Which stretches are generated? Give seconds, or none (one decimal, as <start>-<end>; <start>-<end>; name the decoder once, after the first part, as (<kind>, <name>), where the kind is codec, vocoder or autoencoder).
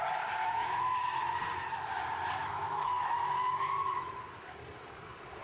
0.4-1.0 (autoencoder, DAC-VAE); 2.4-4.2